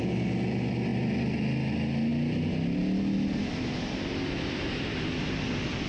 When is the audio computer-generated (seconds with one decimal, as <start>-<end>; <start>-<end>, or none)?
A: none